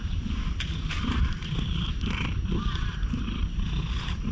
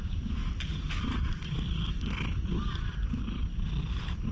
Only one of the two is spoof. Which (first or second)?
first